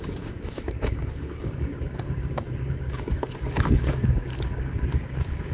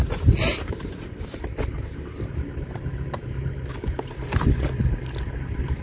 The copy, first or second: first